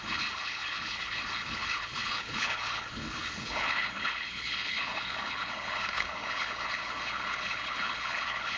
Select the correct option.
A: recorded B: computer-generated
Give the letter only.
B